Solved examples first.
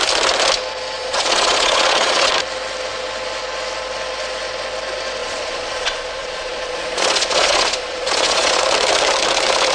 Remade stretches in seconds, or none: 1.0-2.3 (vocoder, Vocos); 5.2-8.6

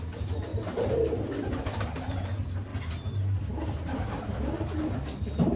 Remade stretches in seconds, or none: 0.5-1.3 (vocoder, BigVGAN v2)

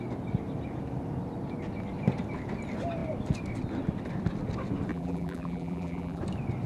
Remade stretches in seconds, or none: 4.9-6.2 (vocoder, BigVGAN v2)

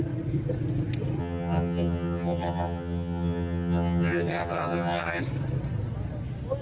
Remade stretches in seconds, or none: 1.2-5.2 (vocoder, HiFi-GAN)